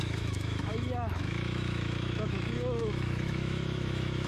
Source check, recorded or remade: remade